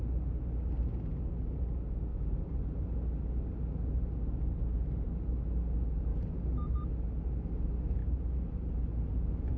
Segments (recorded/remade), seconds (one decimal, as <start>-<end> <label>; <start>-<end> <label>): 0.0-2.1 recorded; 2.1-2.6 remade; 2.6-6.1 recorded; 6.1-6.9 remade; 6.9-8.0 recorded; 8.0-8.7 remade; 8.7-9.6 recorded